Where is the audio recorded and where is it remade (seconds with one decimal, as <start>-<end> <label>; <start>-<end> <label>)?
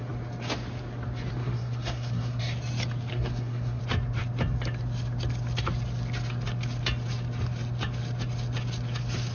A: 0.0-1.4 recorded; 1.4-2.4 remade; 2.4-3.1 recorded; 3.1-3.8 remade; 3.8-9.3 recorded